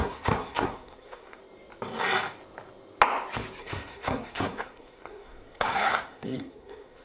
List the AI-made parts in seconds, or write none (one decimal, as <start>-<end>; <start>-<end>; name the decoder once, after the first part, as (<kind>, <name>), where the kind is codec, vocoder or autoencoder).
0.0-1.4 (codec, SNAC); 3.6-7.0